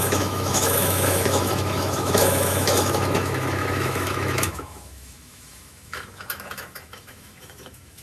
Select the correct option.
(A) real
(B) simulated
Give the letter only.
B